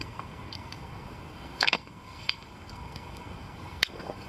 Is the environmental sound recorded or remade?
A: remade